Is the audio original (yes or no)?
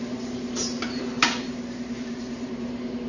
no